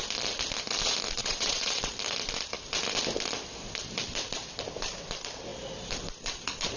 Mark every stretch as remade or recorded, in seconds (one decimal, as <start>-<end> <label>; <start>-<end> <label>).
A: 0.0-1.2 recorded; 1.2-1.9 remade; 1.9-6.8 recorded